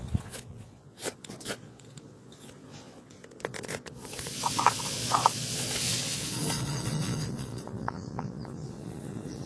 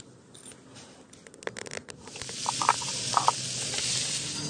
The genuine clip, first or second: second